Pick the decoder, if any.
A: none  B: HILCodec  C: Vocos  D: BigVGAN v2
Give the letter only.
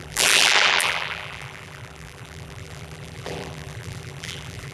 D